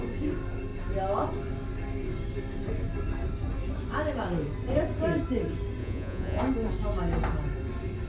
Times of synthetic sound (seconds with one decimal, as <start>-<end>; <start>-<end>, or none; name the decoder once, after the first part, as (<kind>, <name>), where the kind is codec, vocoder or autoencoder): 5.8-6.4 (vocoder, Vocos)